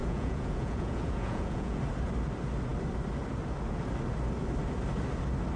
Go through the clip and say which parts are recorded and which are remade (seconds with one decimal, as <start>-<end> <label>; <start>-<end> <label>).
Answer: 0.0-1.8 remade; 1.8-5.6 recorded